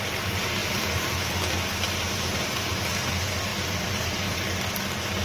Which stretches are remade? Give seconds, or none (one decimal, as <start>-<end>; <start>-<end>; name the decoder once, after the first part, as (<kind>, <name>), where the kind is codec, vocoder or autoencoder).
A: none